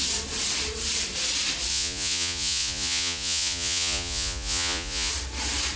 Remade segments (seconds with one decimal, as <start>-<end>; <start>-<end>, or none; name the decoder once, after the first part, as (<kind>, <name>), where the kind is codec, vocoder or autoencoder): 1.7-5.1 (vocoder, Vocos)